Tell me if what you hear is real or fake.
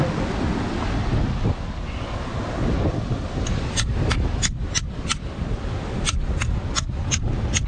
real